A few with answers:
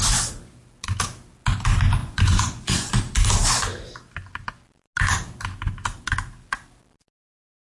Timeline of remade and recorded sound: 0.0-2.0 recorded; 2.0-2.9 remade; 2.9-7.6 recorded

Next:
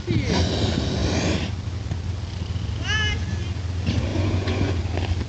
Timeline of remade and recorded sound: 0.0-4.1 recorded; 4.1-4.7 remade; 4.7-5.3 recorded

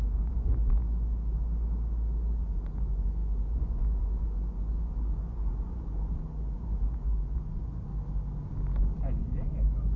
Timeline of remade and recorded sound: 0.0-0.5 remade; 0.5-2.4 recorded; 2.4-7.9 remade; 7.9-9.2 recorded; 9.2-10.0 remade

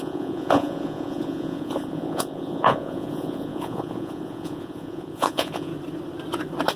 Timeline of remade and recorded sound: 0.0-5.7 remade; 5.7-6.8 recorded